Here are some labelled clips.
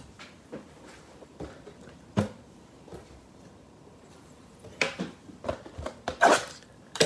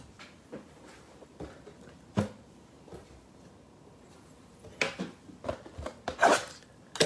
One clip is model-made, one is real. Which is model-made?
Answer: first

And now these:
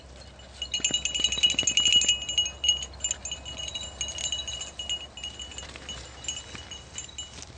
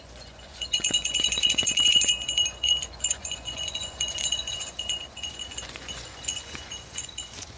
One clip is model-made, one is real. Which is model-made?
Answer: second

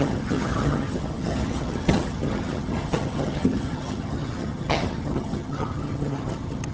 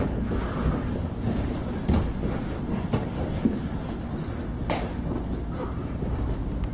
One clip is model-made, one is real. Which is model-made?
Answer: first